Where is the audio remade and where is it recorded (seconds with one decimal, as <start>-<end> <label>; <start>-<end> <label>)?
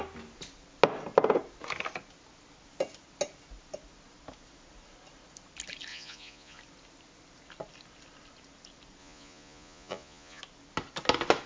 0.0-5.9 recorded; 5.9-6.6 remade; 6.6-9.0 recorded; 9.0-10.4 remade; 10.4-11.5 recorded